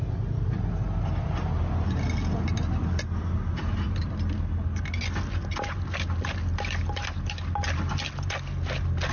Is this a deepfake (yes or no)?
no